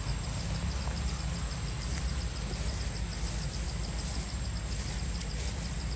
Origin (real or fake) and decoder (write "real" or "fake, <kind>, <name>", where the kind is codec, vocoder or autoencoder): real